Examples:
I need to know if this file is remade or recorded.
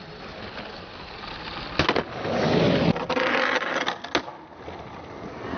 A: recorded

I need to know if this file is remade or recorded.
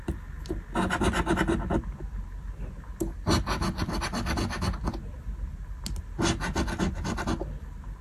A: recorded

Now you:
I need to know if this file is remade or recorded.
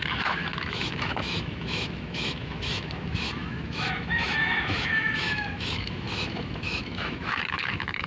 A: remade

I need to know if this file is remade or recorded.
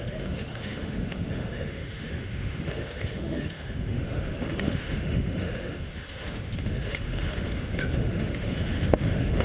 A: remade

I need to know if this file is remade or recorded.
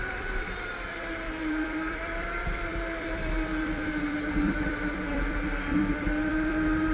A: remade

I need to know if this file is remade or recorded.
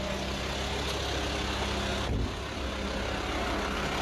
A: recorded